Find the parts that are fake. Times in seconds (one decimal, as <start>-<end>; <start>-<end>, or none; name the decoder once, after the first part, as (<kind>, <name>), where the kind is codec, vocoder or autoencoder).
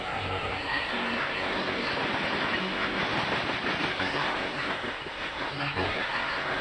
0.0-1.9 (codec, SNAC); 2.6-3.0; 3.9-6.6